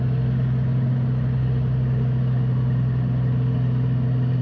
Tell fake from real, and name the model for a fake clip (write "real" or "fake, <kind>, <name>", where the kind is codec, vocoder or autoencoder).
real